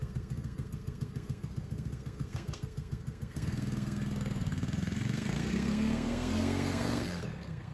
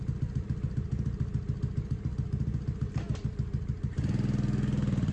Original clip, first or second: second